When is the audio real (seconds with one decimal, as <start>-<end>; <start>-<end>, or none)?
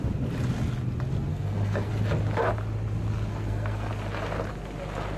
0.0-1.3; 1.9-3.3; 3.9-5.2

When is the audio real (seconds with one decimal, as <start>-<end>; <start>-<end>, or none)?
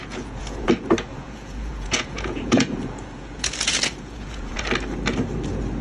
0.7-1.1; 4.6-5.8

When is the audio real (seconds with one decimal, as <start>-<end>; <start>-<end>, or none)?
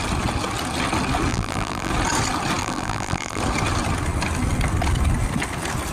0.0-1.3; 1.9-2.6; 3.4-5.9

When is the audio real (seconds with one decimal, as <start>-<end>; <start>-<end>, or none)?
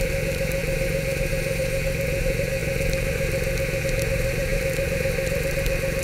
none